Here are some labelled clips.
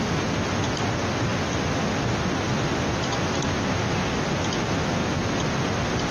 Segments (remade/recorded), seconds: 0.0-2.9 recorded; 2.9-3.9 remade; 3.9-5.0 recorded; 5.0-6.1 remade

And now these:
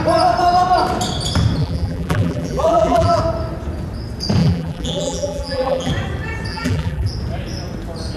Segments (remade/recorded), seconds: 0.0-1.6 recorded; 1.6-3.2 remade; 3.2-4.4 recorded; 4.4-5.9 remade; 5.9-6.5 recorded; 6.5-7.1 remade; 7.1-8.2 recorded

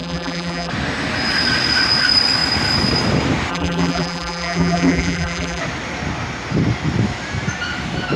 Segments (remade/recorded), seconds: 0.0-0.7 remade; 0.7-3.5 recorded; 3.5-5.6 remade; 5.6-8.2 recorded

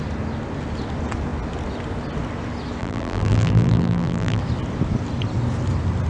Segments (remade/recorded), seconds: 0.0-2.8 recorded; 2.8-4.4 remade; 4.4-6.1 recorded

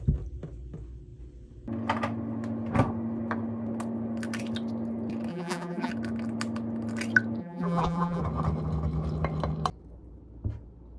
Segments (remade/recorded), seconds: 0.0-5.3 recorded; 5.3-5.9 remade; 5.9-7.4 recorded; 7.4-8.2 remade; 8.2-11.0 recorded

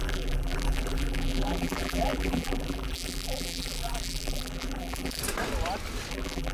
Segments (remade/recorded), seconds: 0.0-5.2 remade; 5.2-6.1 recorded; 6.1-6.5 remade